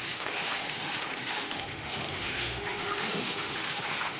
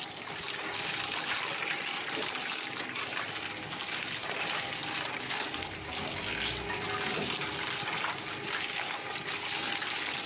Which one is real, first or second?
second